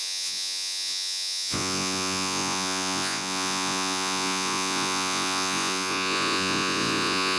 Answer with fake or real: fake